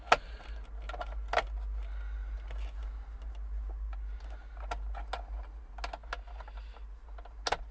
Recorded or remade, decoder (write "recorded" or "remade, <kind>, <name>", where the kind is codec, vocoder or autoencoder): recorded